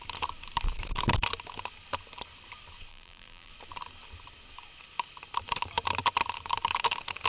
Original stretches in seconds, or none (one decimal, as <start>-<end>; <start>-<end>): 0.0-2.9; 3.5-7.3